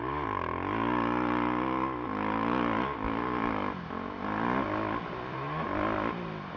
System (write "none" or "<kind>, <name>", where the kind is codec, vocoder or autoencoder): none